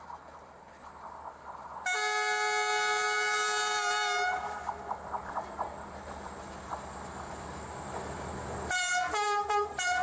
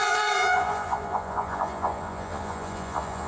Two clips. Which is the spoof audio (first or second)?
second